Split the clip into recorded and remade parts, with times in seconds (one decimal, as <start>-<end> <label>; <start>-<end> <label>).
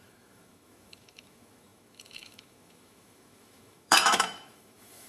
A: 0.0-5.1 remade